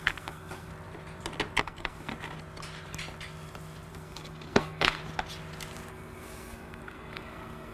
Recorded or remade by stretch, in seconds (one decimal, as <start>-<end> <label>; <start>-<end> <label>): 0.0-0.7 remade; 0.7-1.6 recorded; 1.6-2.1 remade; 2.1-3.9 recorded; 3.9-5.0 remade; 5.0-5.9 recorded; 5.9-7.7 remade